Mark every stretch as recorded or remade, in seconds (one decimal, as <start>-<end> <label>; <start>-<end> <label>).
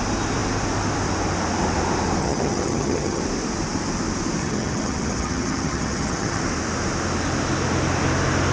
0.0-2.2 recorded; 2.2-3.2 remade; 3.2-4.4 recorded; 4.4-6.4 remade; 6.4-8.5 recorded